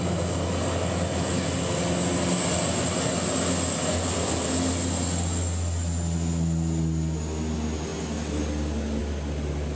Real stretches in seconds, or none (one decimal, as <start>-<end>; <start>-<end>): 0.0-9.8